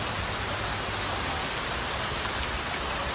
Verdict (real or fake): real